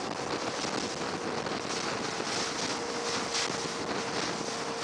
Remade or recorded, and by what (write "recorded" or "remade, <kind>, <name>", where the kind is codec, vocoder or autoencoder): recorded